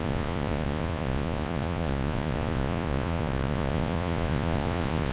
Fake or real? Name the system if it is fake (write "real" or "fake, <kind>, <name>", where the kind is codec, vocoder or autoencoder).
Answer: fake, vocoder, Vocos